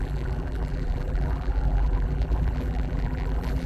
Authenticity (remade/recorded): remade